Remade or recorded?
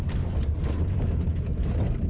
remade